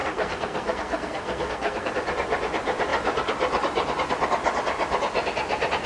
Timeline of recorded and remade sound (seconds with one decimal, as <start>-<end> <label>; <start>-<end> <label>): 0.0-1.9 remade; 1.9-5.9 recorded